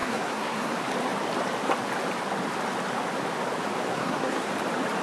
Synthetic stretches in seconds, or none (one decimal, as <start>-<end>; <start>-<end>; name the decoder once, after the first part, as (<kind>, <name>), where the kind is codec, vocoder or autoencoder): 0.0-0.7 (codec, SNAC); 3.9-4.5